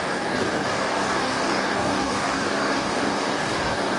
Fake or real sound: fake